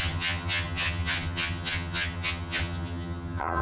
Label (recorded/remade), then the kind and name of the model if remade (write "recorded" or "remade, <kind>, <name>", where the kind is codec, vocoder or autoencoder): remade, vocoder, HiFi-GAN